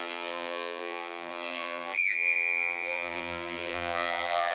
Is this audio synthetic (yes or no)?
yes